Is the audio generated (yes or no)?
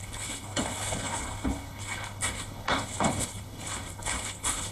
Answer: yes